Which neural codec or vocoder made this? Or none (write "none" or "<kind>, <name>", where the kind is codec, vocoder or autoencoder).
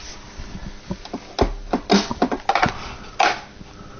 none